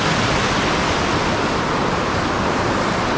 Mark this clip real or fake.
real